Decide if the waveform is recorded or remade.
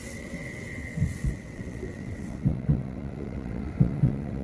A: remade